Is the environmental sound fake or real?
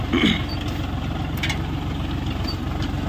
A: real